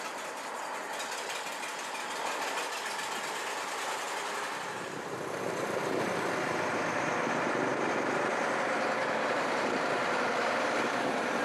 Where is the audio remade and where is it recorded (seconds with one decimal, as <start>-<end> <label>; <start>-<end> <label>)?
0.0-7.7 recorded; 7.7-8.4 remade; 8.4-9.0 recorded; 9.0-9.7 remade; 9.7-11.4 recorded